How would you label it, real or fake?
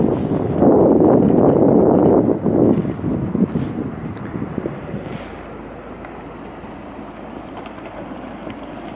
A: real